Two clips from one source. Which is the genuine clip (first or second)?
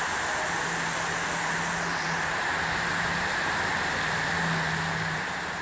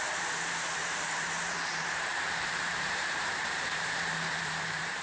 first